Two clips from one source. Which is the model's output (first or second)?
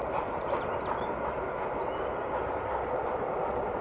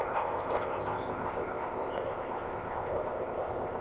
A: second